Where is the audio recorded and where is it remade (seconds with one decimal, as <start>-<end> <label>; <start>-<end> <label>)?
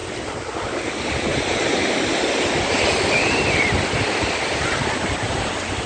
0.0-5.9 remade